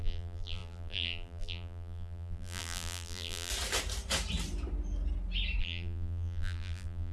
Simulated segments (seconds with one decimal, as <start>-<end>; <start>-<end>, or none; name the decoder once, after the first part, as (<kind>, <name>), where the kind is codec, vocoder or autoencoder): 0.0-3.5 (vocoder, BigVGAN v2); 5.6-7.1